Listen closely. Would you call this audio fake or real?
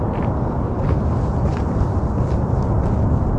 real